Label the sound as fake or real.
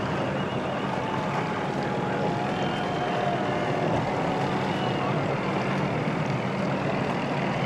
real